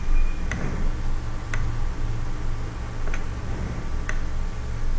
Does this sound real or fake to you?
real